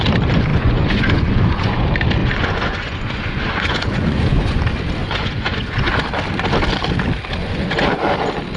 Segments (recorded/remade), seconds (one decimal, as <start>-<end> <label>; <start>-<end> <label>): 0.0-0.5 recorded; 0.5-1.8 remade; 1.8-2.2 recorded; 2.2-4.6 remade; 4.6-5.0 recorded; 5.0-5.9 remade; 5.9-7.4 recorded; 7.4-8.0 remade; 8.0-8.6 recorded